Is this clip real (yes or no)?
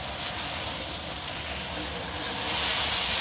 yes